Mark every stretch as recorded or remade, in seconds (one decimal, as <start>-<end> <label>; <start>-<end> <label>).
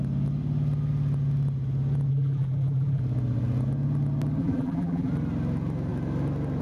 0.0-2.1 recorded; 2.1-3.0 remade; 3.0-4.4 recorded; 4.4-5.1 remade; 5.1-6.6 recorded